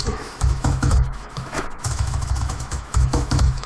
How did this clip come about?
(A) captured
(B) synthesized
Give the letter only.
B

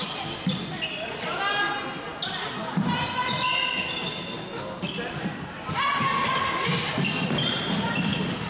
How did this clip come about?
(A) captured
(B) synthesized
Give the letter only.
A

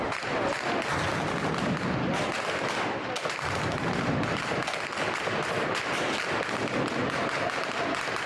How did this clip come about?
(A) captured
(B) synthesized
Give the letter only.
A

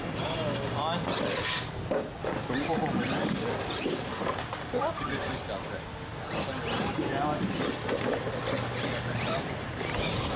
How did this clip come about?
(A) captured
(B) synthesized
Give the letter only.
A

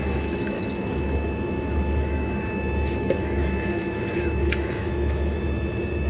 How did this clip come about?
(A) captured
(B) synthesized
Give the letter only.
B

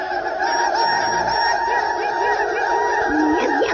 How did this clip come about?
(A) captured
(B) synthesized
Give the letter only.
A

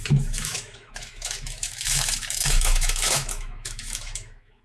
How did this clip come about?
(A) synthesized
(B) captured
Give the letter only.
A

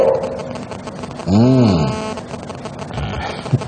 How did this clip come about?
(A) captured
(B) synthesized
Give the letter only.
A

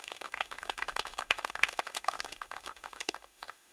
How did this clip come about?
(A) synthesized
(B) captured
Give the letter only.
A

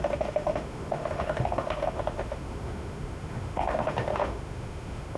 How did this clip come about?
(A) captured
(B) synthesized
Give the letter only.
B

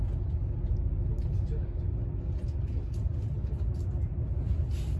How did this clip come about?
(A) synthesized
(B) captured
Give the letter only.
B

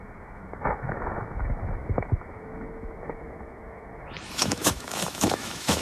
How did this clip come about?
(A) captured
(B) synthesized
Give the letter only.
B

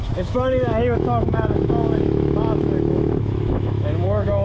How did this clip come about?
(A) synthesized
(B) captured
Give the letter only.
A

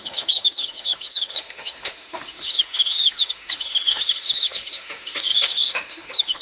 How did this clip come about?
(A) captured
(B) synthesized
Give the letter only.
B